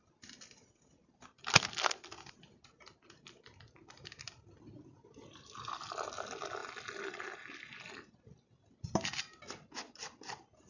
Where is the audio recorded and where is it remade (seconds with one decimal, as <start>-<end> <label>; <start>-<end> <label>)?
0.0-10.7 recorded